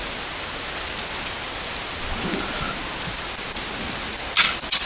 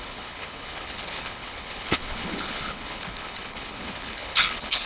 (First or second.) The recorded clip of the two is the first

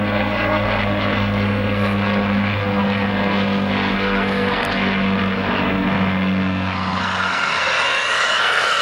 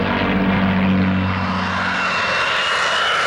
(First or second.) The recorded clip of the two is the second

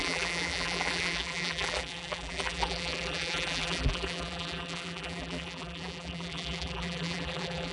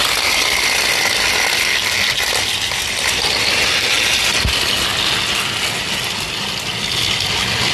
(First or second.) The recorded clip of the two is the second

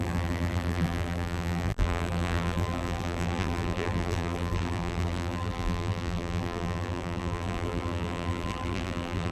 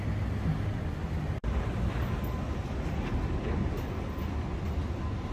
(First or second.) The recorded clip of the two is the second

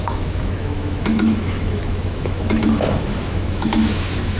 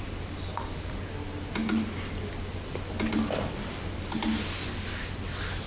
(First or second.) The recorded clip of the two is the second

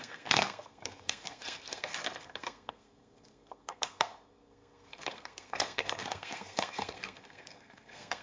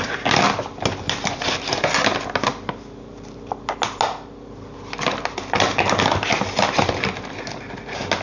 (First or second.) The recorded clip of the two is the second